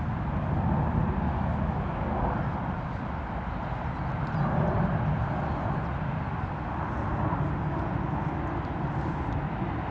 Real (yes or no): yes